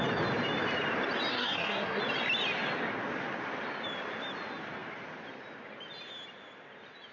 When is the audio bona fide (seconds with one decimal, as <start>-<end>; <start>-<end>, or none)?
0.0-1.3; 2.0-7.1